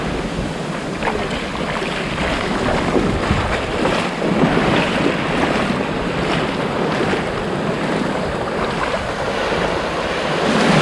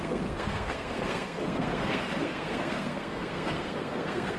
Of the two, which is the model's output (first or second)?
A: second